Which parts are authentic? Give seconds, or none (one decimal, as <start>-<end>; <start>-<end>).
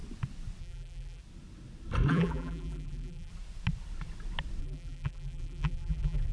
0.0-0.6; 1.2-2.1; 3.3-4.6